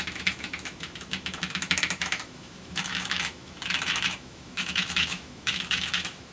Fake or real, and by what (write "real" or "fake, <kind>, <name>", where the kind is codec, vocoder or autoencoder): fake, autoencoder, DAC-VAE